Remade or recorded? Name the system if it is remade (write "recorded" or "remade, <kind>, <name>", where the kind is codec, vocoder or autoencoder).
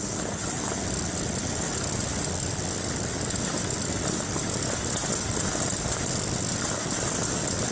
recorded